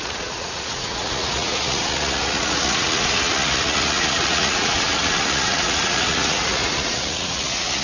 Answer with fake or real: fake